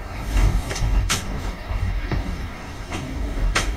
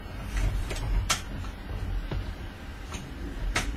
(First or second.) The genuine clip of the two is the second